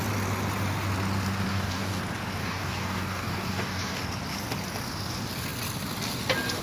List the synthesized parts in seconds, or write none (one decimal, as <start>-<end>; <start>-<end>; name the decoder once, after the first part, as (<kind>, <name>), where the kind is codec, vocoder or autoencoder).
1.5-2.0 (codec, DAC); 2.4-4.0